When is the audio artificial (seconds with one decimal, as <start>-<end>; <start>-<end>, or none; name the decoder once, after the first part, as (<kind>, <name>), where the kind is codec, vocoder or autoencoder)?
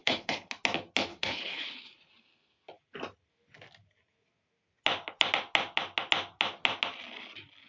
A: 0.0-0.5 (codec, HILCodec); 1.1-2.1